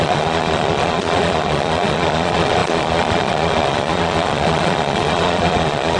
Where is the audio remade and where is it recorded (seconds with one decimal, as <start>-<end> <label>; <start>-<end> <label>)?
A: 0.0-6.0 remade